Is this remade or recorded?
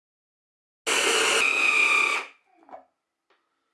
recorded